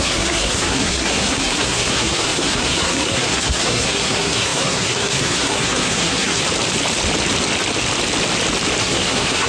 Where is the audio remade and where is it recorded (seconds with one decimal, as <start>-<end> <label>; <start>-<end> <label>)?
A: 0.0-6.4 remade; 6.4-8.8 recorded; 8.8-9.5 remade